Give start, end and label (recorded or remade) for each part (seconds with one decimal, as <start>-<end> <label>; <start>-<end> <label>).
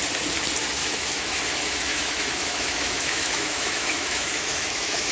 0.0-0.8 recorded; 0.8-1.4 remade; 1.4-1.9 recorded; 1.9-5.1 remade